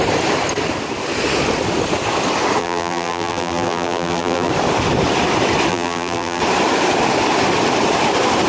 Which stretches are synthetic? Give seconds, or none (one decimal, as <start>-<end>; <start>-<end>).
2.6-4.5; 5.7-6.4